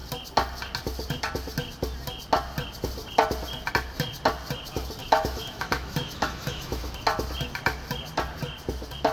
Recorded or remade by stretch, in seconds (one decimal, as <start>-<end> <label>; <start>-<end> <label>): 0.0-5.0 recorded; 5.0-6.8 remade; 6.8-9.1 recorded